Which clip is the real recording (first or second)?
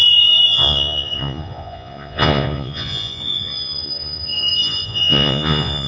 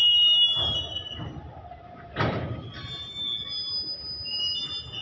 second